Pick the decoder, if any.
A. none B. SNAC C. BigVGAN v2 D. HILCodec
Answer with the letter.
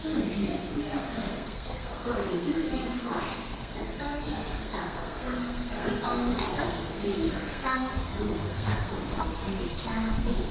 B